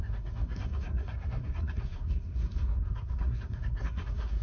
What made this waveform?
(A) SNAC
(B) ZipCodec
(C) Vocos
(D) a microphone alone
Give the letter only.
A